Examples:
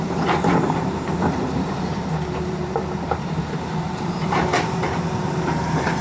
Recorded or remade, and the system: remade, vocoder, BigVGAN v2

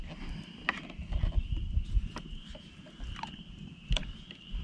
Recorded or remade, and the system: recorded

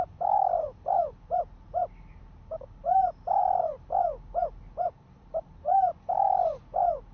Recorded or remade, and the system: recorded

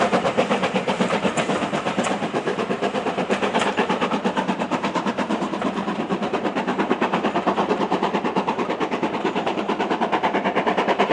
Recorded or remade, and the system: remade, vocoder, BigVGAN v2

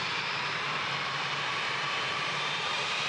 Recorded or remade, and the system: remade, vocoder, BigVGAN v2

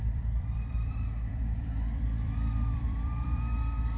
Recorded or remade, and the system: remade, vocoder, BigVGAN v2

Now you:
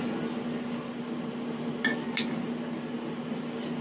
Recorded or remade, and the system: recorded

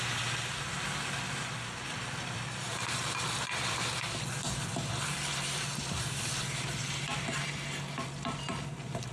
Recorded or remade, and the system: remade, vocoder, BigVGAN v2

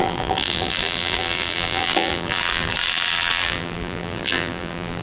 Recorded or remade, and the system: remade, vocoder, BigVGAN v2